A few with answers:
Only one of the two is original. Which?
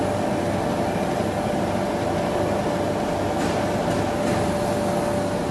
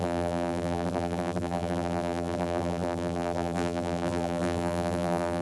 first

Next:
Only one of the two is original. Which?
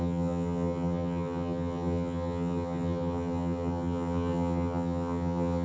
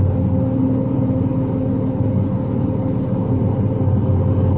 second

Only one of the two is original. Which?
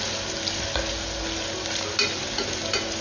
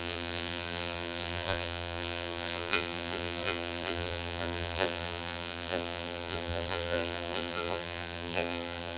first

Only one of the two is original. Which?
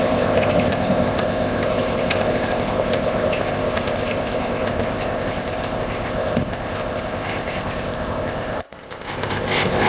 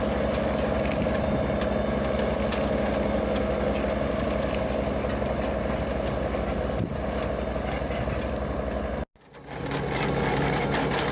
second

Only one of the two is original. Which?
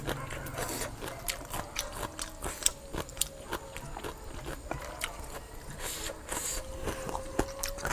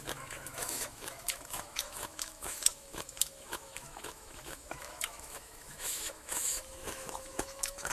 first